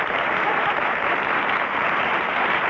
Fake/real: fake